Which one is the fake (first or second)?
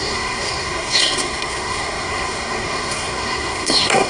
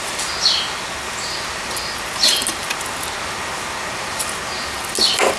first